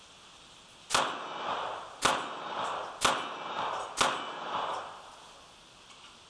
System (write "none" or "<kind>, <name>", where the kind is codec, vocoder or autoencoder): none